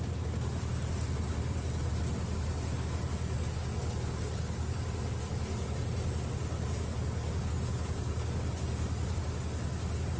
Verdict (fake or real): real